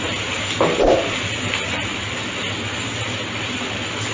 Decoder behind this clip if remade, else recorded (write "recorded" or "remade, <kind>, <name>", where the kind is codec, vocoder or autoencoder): recorded